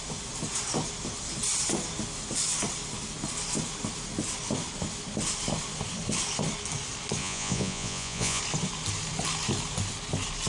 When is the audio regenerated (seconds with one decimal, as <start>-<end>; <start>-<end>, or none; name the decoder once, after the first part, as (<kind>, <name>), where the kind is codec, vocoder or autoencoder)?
7.2-8.4 (vocoder, Vocos)